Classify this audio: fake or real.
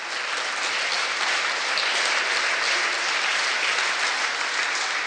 real